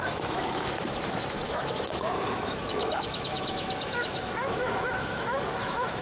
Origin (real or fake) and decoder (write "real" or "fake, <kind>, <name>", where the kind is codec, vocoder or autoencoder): fake, autoencoder, DAC-VAE